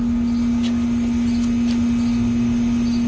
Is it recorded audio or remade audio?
recorded